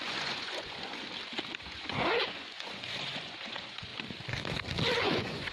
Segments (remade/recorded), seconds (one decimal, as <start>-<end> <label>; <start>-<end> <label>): 0.0-1.1 remade; 1.1-1.6 recorded; 1.6-3.9 remade; 3.9-5.0 recorded; 5.0-5.5 remade

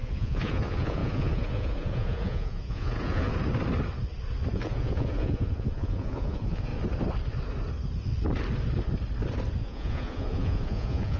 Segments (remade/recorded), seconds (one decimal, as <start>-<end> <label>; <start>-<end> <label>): 0.0-3.3 remade; 3.3-4.5 recorded; 4.5-6.7 remade; 6.7-9.6 recorded; 9.6-11.2 remade

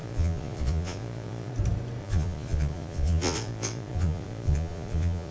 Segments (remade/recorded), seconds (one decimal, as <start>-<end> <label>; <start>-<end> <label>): 0.0-1.5 remade; 1.5-2.0 recorded; 2.0-5.3 remade

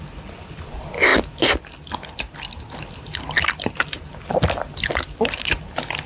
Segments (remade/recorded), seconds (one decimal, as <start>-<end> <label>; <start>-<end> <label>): 0.0-6.1 recorded